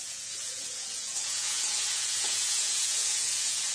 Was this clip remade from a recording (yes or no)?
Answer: yes